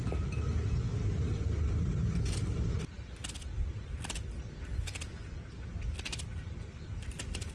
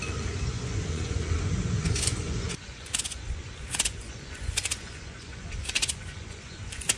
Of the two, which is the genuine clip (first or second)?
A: first